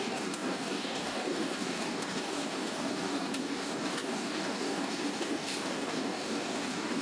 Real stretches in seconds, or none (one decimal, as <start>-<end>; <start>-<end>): none